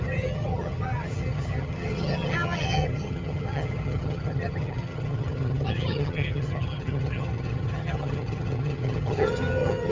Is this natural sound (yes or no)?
no